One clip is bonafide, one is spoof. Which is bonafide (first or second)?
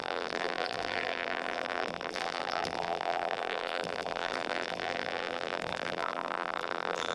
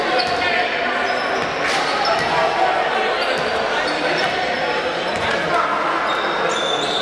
second